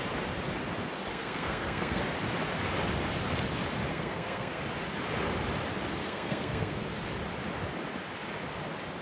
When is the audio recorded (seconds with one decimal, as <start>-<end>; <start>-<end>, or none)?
0.0-1.1; 2.0-3.9; 4.6-6.0; 6.8-9.0

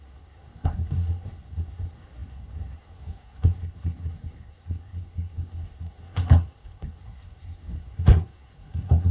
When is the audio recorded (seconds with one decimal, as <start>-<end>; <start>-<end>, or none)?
none

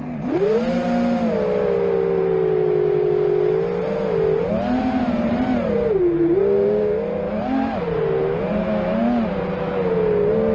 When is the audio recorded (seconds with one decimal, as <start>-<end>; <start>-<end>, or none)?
0.0-10.5

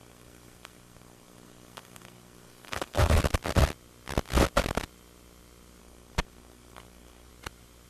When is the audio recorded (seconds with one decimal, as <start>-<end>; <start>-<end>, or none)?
3.2-5.8; 7.3-7.9

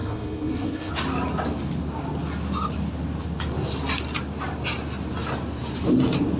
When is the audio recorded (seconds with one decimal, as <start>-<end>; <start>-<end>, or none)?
0.9-6.4

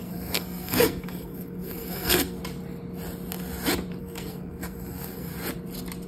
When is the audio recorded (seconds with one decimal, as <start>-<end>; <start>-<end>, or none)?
2.4-4.0; 5.3-6.1

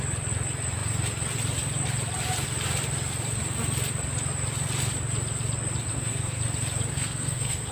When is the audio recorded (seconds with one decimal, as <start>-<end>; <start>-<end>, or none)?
0.0-5.9; 6.4-6.9

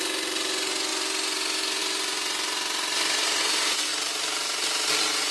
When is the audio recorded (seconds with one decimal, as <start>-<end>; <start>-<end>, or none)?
0.0-5.3